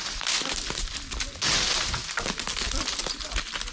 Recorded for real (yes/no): yes